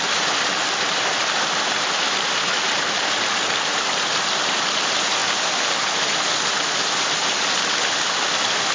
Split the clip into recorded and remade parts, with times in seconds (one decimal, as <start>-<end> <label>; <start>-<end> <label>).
0.0-8.7 recorded